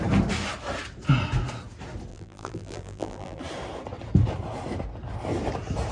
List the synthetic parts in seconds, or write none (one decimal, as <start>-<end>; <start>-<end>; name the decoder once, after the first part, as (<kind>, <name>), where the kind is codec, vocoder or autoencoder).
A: 2.1-3.4 (vocoder, BigVGAN v2)